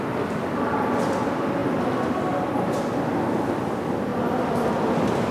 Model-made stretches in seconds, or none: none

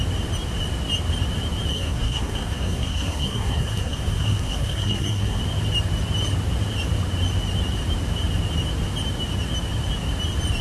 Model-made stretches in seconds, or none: 1.7-5.4 (codec, SNAC)

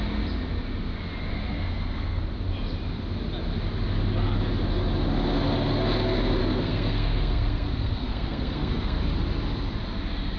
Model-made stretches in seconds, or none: 1.3-2.2 (codec, SNAC); 6.4-9.0